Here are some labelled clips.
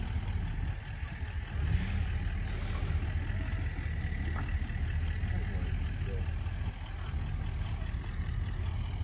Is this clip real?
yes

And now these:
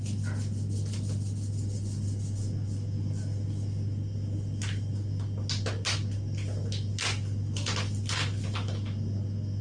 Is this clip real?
yes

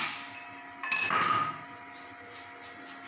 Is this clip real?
yes